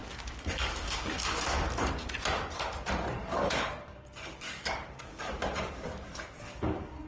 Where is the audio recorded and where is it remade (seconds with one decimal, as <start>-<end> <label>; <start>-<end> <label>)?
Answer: 0.0-1.9 remade; 1.9-3.2 recorded; 3.2-7.1 remade